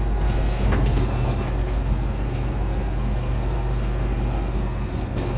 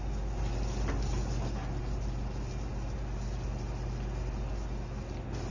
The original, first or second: second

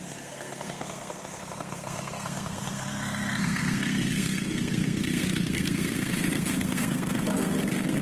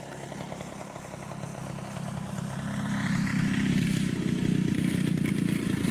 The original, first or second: second